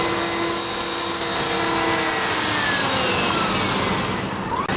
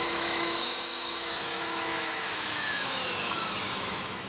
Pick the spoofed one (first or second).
second